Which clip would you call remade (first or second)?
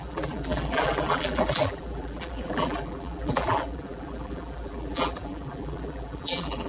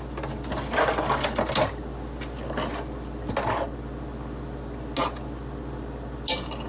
first